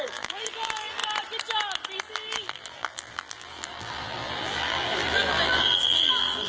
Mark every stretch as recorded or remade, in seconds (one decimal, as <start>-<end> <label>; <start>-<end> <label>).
0.0-1.0 remade; 1.0-2.0 recorded; 2.0-6.5 remade